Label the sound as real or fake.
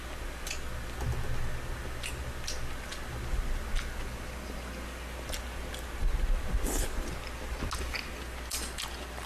real